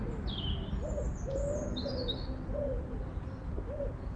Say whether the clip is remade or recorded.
recorded